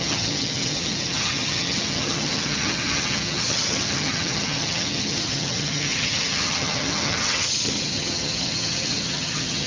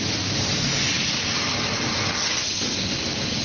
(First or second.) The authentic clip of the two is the second